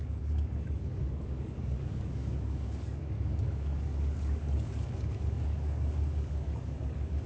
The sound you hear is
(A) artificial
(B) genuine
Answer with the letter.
A